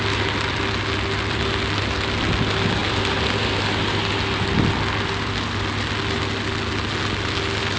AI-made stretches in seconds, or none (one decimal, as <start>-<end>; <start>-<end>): none